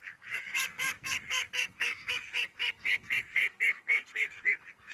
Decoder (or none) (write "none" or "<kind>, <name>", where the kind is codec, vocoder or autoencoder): codec, SNAC